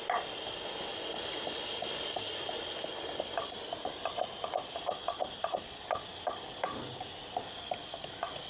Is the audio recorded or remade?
recorded